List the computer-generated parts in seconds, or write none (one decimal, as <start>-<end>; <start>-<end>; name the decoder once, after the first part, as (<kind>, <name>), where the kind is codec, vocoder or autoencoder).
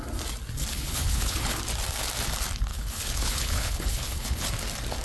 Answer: 0.7-1.6 (codec, HILCodec); 2.7-4.5